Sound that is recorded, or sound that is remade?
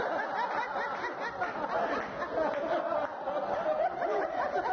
remade